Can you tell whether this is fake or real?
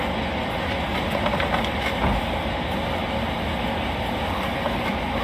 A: real